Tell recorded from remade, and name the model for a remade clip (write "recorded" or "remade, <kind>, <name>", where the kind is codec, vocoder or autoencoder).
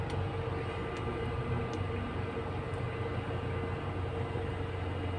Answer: recorded